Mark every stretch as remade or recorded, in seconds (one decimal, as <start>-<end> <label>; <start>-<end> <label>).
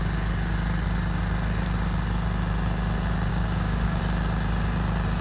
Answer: 0.0-3.3 recorded; 3.3-4.0 remade; 4.0-5.2 recorded